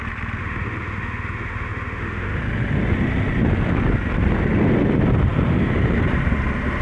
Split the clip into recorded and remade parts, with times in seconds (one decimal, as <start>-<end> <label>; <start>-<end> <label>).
0.0-0.4 recorded; 0.4-2.4 remade; 2.4-6.8 recorded